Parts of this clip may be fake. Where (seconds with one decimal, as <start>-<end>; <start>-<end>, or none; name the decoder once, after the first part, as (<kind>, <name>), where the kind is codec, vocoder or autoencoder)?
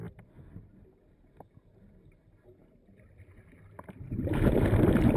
2.6-4.5 (vocoder, BigVGAN v2)